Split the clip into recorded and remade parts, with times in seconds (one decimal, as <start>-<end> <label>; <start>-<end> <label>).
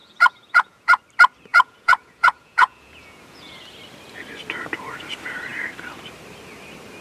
0.0-1.0 remade; 1.0-1.5 recorded; 1.5-3.6 remade; 3.6-7.0 recorded